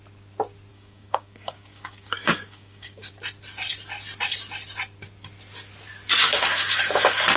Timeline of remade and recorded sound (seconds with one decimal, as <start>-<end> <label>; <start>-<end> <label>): 0.0-0.7 recorded; 0.7-3.1 remade; 3.1-6.2 recorded; 6.2-7.4 remade